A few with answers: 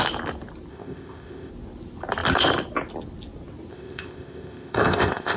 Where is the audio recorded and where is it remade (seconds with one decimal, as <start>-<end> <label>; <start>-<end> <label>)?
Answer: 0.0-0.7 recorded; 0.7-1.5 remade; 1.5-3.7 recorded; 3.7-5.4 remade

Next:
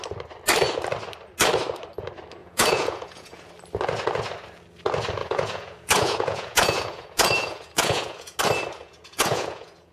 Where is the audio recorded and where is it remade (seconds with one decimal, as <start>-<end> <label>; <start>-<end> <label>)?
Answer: 0.0-2.4 recorded; 2.4-3.5 remade; 3.5-5.2 recorded; 5.2-8.4 remade; 8.4-8.8 recorded; 8.8-9.9 remade

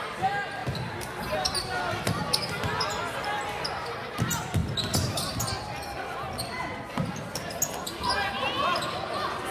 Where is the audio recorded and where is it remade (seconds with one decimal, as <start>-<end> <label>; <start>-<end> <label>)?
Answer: 0.0-9.5 recorded

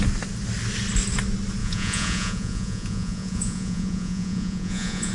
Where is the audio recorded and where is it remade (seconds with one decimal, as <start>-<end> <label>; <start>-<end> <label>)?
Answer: 0.0-1.6 recorded; 1.6-5.1 remade

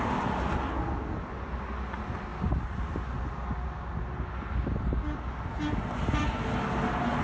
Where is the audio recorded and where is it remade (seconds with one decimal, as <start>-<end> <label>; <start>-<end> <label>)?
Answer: 0.0-7.2 recorded

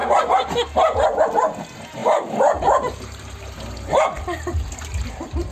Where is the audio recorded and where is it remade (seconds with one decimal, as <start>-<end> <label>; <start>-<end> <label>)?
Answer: 0.0-2.0 recorded; 2.0-5.5 remade

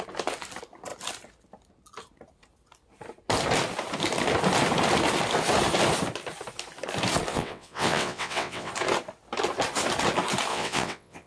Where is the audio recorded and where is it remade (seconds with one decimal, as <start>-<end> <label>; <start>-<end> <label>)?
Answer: 0.0-7.3 recorded; 7.3-8.7 remade; 8.7-10.5 recorded; 10.5-11.3 remade

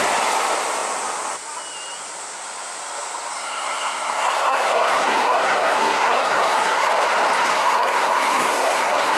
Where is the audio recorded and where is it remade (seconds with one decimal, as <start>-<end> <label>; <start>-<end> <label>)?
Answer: 0.0-3.3 recorded; 3.3-6.9 remade; 6.9-7.5 recorded; 7.5-9.2 remade